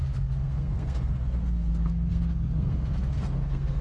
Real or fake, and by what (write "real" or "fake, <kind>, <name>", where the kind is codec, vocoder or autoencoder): fake, codec, SNAC